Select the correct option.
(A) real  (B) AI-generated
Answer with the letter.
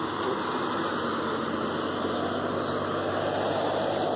A